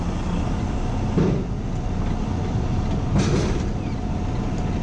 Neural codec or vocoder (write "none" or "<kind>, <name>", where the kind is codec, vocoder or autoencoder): none